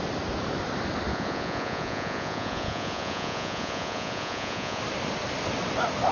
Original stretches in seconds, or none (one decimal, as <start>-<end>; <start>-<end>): 0.0-1.1; 4.8-6.1